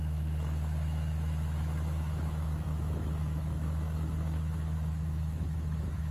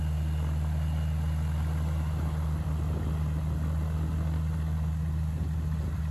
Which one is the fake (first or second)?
first